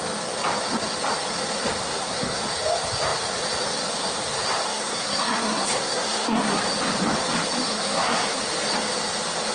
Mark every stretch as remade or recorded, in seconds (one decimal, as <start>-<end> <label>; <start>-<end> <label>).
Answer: 0.0-1.8 recorded; 1.8-2.4 remade; 2.4-4.7 recorded; 4.7-6.6 remade; 6.6-7.6 recorded; 7.6-8.4 remade; 8.4-9.5 recorded